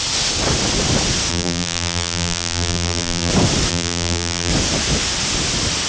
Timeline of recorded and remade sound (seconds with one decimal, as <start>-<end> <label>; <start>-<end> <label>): 0.0-1.3 recorded; 1.3-3.3 remade; 3.3-3.7 recorded; 3.7-4.5 remade; 4.5-5.9 recorded